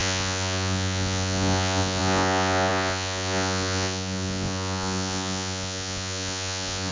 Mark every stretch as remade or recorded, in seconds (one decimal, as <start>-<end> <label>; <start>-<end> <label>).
0.0-6.9 remade